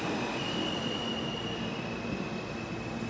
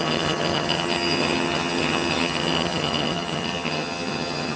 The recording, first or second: first